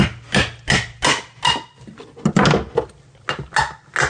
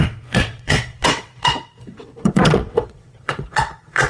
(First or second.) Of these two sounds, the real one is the first